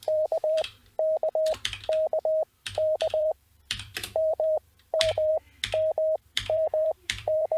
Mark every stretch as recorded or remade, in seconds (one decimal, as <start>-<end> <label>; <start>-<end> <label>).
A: 0.0-0.8 remade; 0.8-2.5 recorded; 2.5-5.3 remade; 5.3-6.2 recorded; 6.2-7.6 remade